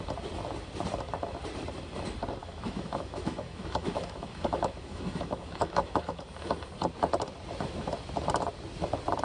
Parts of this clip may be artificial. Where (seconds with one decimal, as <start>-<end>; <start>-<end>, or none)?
2.4-6.2